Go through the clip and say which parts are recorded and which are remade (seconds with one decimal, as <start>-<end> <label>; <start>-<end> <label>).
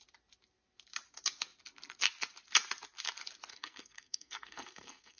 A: 0.0-3.5 recorded; 3.5-5.2 remade